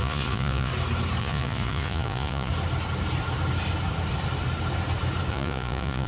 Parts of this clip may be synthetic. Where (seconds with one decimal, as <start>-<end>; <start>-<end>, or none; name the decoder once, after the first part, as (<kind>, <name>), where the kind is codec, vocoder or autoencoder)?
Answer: 0.0-0.7 (vocoder, Vocos); 1.2-2.5; 5.3-6.1